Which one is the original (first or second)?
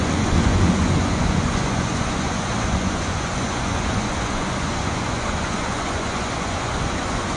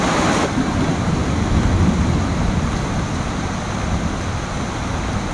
second